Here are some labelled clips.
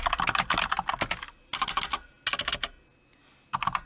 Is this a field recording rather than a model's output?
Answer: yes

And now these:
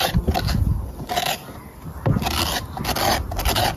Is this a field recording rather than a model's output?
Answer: yes